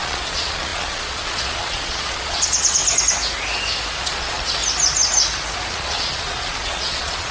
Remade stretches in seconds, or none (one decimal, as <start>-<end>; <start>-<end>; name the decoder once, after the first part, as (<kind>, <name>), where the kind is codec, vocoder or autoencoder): 0.0-2.8 (vocoder, Vocos); 4.0-4.6; 5.7-7.3